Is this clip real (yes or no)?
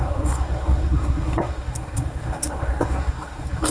no